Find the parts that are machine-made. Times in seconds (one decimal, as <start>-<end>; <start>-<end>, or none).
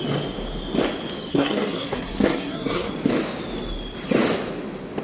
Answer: 1.3-2.9